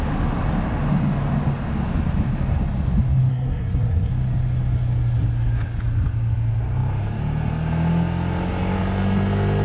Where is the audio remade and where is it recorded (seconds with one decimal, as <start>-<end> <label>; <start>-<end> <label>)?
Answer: 0.0-3.3 recorded; 3.3-4.1 remade; 4.1-9.6 recorded